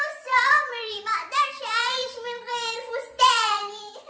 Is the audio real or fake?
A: fake